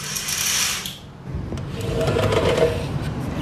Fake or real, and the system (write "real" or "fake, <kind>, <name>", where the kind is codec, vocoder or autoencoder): real